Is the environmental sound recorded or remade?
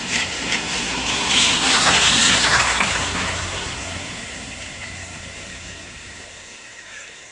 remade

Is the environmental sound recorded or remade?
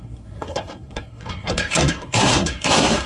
remade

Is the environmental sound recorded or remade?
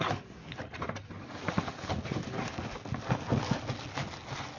recorded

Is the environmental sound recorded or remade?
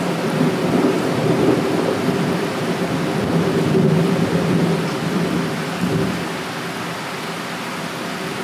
recorded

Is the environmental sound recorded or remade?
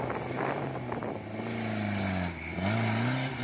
recorded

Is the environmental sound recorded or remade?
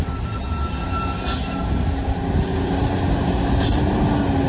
recorded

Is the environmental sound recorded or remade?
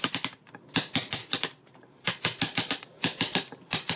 recorded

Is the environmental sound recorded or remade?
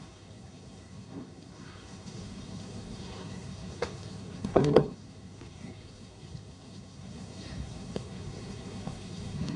remade